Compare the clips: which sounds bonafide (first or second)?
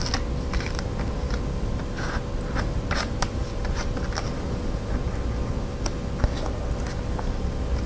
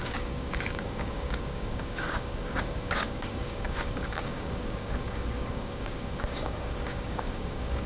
first